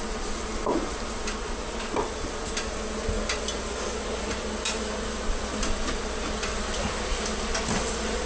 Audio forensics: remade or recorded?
recorded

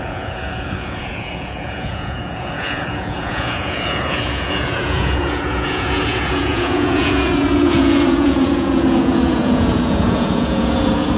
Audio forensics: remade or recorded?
remade